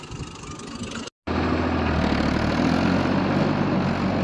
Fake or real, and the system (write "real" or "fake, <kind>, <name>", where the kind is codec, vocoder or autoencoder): real